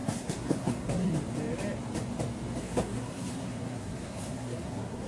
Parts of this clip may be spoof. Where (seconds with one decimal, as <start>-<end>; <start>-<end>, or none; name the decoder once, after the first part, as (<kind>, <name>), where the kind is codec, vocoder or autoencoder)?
0.0-1.1 (codec, SNAC); 2.6-5.1